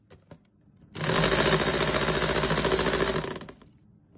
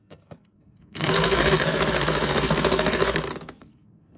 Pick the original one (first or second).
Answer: first